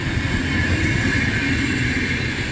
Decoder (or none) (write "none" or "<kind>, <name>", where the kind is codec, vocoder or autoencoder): none